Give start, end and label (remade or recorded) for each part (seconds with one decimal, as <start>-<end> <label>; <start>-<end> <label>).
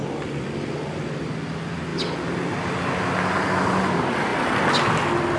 0.0-5.4 recorded